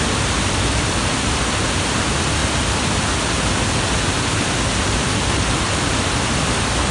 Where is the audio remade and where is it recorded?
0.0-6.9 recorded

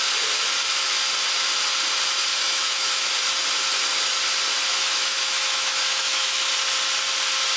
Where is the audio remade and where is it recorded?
0.0-2.3 recorded; 2.3-3.1 remade; 3.1-4.7 recorded; 4.7-6.5 remade; 6.5-7.6 recorded

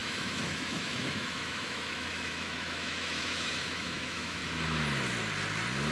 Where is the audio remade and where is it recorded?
0.0-4.4 remade; 4.4-5.9 recorded

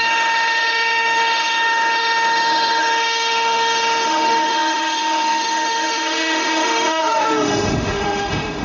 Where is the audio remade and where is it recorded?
0.0-8.6 remade

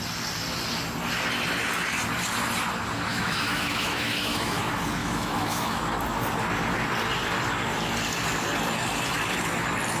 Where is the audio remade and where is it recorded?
0.0-3.1 recorded; 3.1-4.6 remade; 4.6-5.0 recorded; 5.0-5.8 remade; 5.8-10.0 recorded

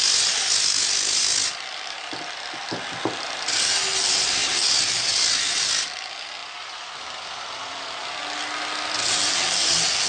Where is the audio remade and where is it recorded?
0.0-10.1 recorded